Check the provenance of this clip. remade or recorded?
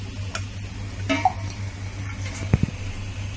recorded